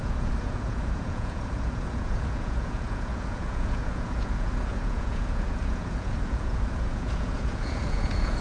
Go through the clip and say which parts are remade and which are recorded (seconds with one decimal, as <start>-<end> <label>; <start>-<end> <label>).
0.0-8.4 remade